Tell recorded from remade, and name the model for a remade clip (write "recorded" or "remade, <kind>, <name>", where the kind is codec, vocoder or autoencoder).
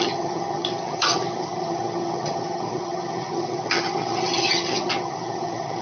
remade, vocoder, HiFi-GAN